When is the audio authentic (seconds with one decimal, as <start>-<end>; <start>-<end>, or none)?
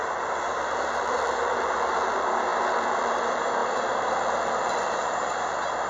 none